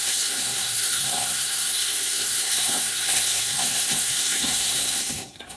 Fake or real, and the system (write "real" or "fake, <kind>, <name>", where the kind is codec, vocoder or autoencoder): fake, codec, SNAC